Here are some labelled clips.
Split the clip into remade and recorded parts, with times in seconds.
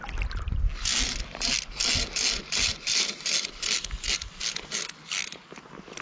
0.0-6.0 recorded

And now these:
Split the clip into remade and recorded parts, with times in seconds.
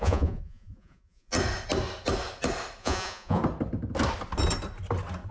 0.0-1.3 remade; 1.3-2.8 recorded; 2.8-3.4 remade; 3.4-5.3 recorded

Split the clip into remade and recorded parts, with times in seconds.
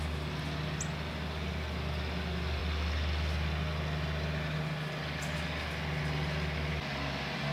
0.0-7.5 recorded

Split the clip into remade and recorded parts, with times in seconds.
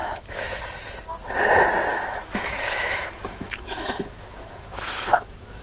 0.0-0.6 remade; 0.6-1.9 recorded; 1.9-5.6 remade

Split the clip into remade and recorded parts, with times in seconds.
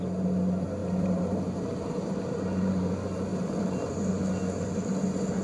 0.0-0.8 recorded; 0.8-2.9 remade; 2.9-3.3 recorded; 3.3-4.1 remade; 4.1-5.4 recorded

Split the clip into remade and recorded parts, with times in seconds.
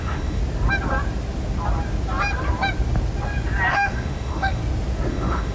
0.0-0.4 remade; 0.4-3.7 recorded; 3.7-4.6 remade; 4.6-5.1 recorded; 5.1-5.5 remade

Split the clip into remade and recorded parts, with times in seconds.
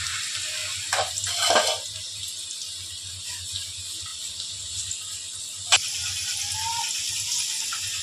0.0-4.1 recorded; 4.1-5.4 remade; 5.4-6.3 recorded; 6.3-7.1 remade; 7.1-8.0 recorded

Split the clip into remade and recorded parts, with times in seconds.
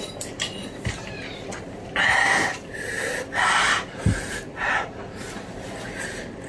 0.0-2.5 recorded; 2.5-6.5 remade